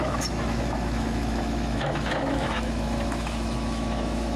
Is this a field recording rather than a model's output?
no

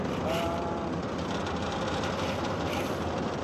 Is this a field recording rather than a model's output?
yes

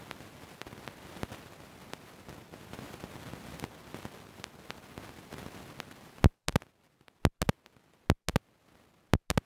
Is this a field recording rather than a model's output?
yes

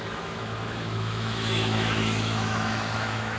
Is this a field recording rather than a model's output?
no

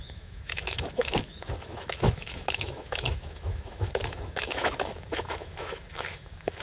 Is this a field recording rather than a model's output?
no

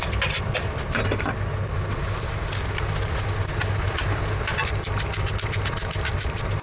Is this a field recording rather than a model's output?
yes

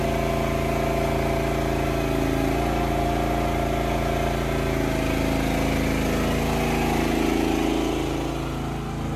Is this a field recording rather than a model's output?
yes